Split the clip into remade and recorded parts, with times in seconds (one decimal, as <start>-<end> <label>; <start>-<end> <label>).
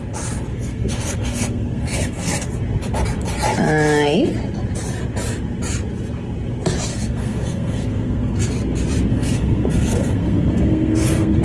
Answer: 0.0-0.5 recorded; 0.5-2.5 remade; 2.5-6.9 recorded; 6.9-8.5 remade; 8.5-9.1 recorded; 9.1-11.4 remade